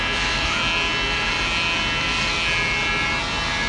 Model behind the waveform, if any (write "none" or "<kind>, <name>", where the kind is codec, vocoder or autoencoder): none